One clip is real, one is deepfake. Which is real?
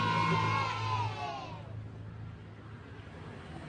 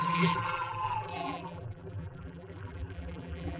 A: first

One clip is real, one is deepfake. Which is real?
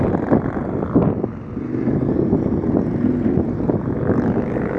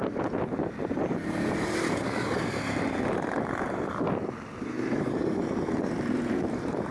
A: first